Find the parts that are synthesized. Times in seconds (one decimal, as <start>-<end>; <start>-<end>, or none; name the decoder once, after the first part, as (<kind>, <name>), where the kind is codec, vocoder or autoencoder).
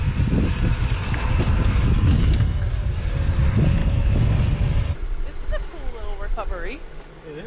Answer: none